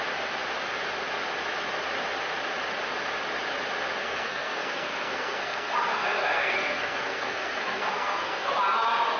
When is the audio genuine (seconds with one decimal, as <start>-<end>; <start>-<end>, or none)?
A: 0.0-4.0; 8.5-9.2